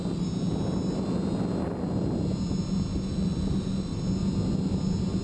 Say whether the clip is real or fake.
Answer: real